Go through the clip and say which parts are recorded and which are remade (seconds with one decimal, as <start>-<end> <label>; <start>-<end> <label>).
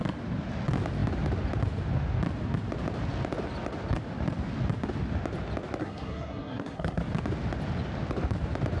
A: 0.0-5.8 recorded; 5.8-7.0 remade; 7.0-8.8 recorded